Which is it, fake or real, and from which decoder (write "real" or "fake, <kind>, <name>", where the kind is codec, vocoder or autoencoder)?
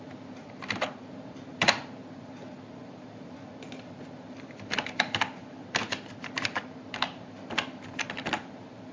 fake, vocoder, BigVGAN v2